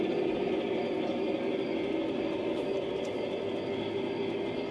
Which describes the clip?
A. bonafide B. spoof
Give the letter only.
A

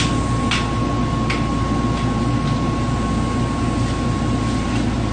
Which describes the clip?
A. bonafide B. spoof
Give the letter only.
A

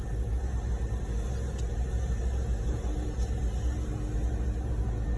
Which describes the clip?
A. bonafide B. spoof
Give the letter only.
A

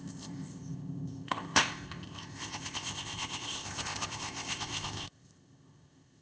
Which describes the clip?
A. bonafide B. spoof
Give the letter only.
B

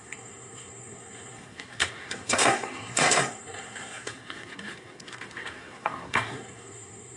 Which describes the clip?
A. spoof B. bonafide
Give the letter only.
A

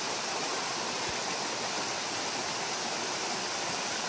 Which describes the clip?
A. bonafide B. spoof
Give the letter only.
A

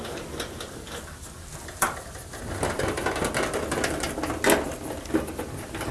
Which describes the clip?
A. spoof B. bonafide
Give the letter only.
B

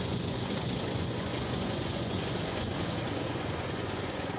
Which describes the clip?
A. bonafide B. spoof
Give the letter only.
B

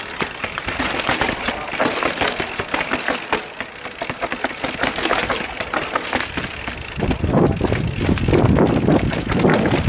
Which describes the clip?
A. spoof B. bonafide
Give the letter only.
B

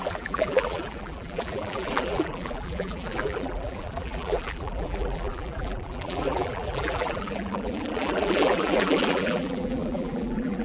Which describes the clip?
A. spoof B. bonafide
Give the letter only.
A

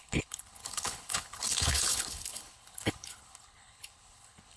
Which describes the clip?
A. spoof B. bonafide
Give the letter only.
A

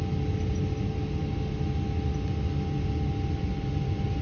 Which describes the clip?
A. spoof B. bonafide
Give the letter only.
B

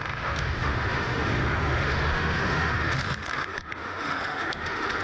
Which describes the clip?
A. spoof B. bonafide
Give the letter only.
A